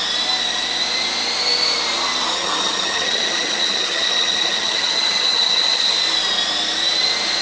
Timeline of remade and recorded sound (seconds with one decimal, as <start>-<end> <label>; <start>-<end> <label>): 0.0-2.4 recorded; 2.4-5.9 remade; 5.9-7.4 recorded